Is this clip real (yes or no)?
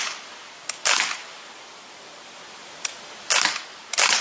yes